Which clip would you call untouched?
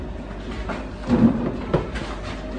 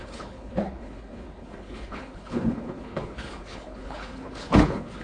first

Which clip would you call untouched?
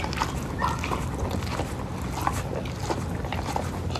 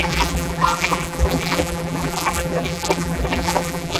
first